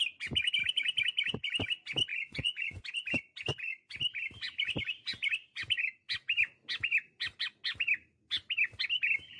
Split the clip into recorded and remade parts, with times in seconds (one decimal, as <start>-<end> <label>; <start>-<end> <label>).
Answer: 0.0-2.1 recorded; 2.1-2.8 remade; 2.8-9.4 recorded